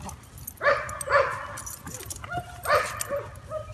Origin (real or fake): real